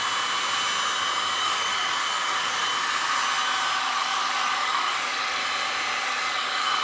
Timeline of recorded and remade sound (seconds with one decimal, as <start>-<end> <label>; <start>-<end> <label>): 0.0-1.4 recorded; 1.4-2.7 remade; 2.7-3.8 recorded; 3.8-5.4 remade; 5.4-6.0 recorded; 6.0-6.8 remade